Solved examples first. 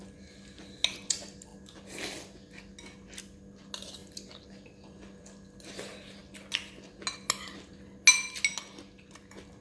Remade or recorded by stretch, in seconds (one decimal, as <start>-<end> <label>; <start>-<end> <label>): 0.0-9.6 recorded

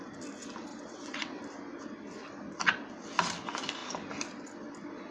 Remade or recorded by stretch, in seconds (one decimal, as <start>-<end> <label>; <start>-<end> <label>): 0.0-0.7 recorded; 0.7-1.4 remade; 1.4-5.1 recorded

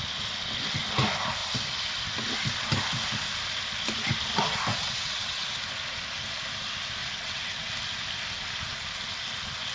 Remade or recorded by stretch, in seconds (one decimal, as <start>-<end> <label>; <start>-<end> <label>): 0.0-4.7 recorded; 4.7-5.5 remade; 5.5-7.0 recorded; 7.0-7.7 remade; 7.7-9.7 recorded

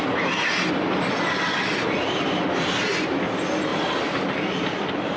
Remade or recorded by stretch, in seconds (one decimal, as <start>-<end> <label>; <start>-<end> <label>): 0.0-5.2 recorded

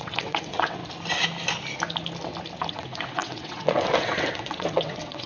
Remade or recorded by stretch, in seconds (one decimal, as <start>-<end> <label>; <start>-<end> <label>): 0.0-0.8 remade; 0.8-2.7 recorded; 2.7-5.3 remade

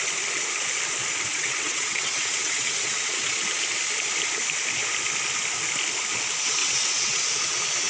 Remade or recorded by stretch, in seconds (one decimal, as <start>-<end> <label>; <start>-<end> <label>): 0.0-1.3 recorded; 1.3-3.4 remade; 3.4-6.6 recorded; 6.6-7.2 remade; 7.2-7.9 recorded

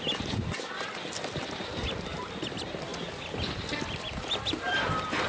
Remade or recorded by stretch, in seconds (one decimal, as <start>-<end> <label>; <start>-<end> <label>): 0.0-5.3 recorded

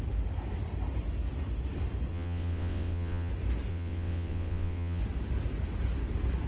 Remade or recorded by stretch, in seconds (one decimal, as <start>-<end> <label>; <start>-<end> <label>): 0.0-2.1 recorded; 2.1-3.3 remade; 3.3-3.7 recorded; 3.7-5.0 remade; 5.0-6.5 recorded